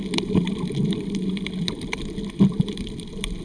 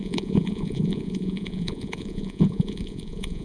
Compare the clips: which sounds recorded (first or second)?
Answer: first